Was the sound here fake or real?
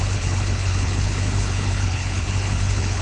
fake